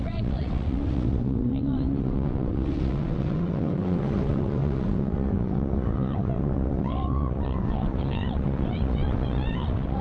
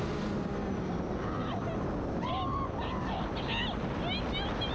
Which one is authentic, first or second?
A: second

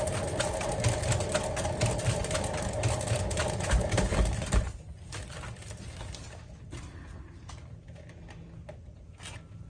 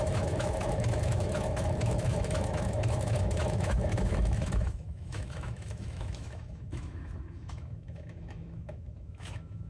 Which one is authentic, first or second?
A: first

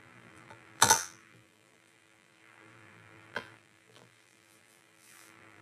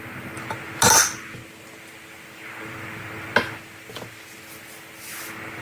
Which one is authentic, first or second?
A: second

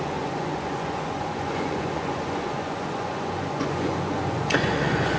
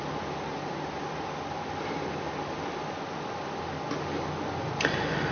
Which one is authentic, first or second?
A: second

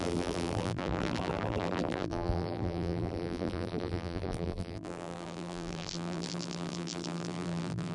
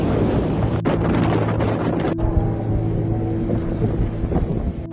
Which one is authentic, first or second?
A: second